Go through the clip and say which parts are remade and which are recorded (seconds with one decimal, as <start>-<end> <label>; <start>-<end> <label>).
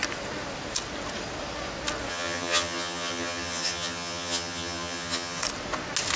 0.0-2.1 recorded; 2.1-5.4 remade; 5.4-6.2 recorded